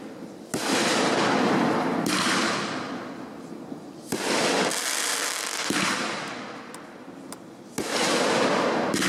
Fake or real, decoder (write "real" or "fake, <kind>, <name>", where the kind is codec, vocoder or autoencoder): real